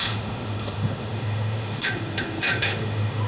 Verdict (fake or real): fake